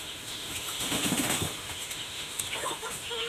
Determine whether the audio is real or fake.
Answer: fake